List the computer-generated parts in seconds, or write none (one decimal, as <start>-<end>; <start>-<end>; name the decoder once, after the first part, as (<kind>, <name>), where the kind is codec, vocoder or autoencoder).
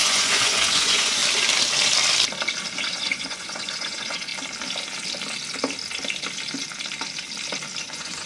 0.0-1.2 (vocoder, Vocos); 2.8-4.3; 7.8-8.3